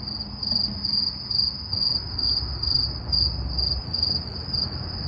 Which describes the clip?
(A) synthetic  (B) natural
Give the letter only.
B